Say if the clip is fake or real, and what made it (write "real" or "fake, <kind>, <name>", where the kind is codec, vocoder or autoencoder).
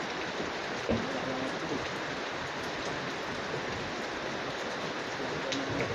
real